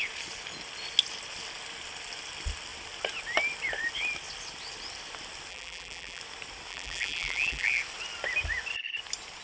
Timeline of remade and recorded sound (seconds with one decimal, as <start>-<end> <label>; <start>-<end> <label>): 0.0-5.5 recorded; 5.5-6.2 remade; 6.2-6.7 recorded; 6.7-7.8 remade; 7.8-9.4 recorded